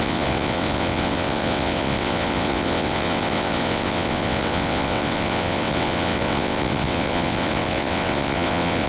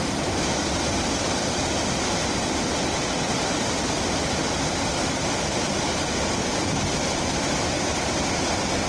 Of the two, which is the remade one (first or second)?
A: first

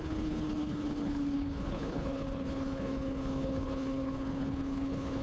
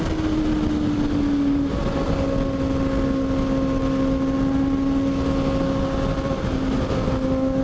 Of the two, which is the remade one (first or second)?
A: first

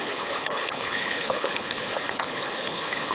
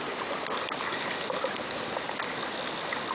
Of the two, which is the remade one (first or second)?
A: first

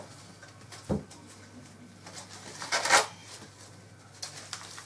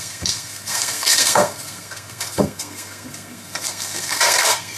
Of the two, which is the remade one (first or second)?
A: second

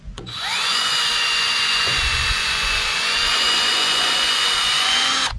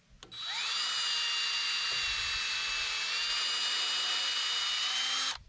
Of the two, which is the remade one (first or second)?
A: first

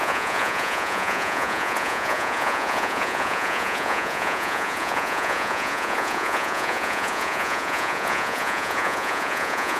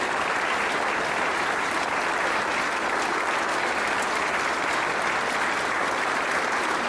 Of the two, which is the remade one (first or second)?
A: first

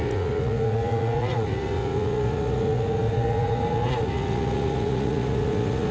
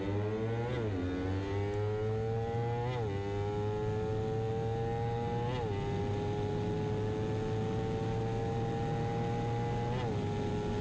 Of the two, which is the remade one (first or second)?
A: first